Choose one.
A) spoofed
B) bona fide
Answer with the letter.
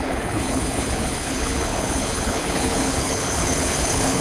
A